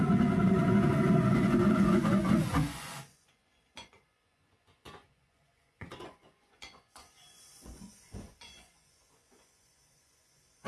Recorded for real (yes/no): no